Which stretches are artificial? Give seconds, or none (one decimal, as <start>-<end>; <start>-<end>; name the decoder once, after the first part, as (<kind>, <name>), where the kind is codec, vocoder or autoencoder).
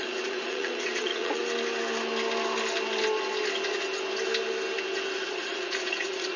0.0-1.4 (vocoder, Vocos); 5.2-6.4